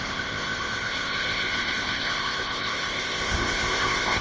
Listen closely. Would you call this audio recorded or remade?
remade